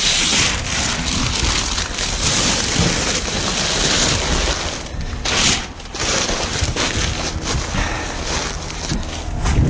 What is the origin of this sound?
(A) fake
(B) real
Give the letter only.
B